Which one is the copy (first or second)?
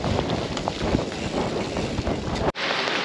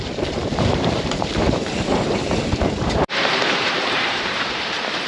second